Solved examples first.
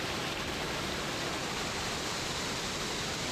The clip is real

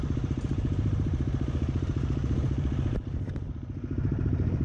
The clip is fake